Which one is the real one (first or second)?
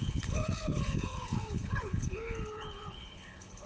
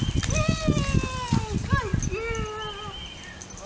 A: second